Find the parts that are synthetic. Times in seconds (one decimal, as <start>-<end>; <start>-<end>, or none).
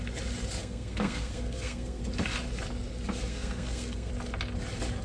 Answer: 0.6-2.0; 3.3-4.1